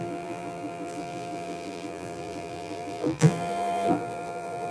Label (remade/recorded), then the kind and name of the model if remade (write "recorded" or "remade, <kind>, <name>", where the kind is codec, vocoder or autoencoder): remade, vocoder, BigVGAN v2